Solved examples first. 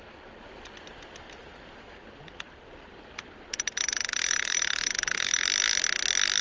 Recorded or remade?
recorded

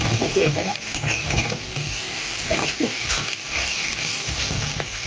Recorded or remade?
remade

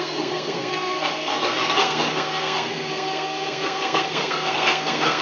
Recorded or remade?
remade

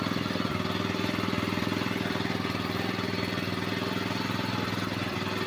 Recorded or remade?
recorded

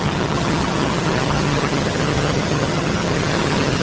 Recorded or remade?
remade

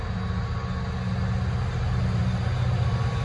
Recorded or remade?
recorded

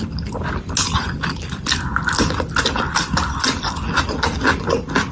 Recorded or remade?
recorded